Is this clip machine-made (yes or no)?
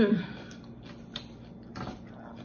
no